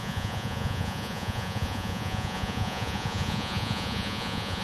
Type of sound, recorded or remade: remade